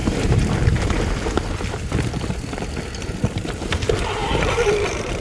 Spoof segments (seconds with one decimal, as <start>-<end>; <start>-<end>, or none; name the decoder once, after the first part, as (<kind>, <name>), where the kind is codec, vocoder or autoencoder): 0.0-1.1 (vocoder, BigVGAN v2); 4.2-5.2